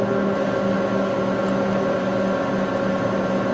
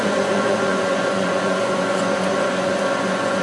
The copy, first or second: second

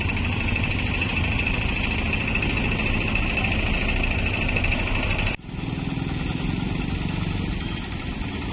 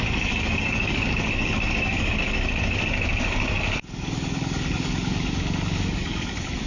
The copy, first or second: second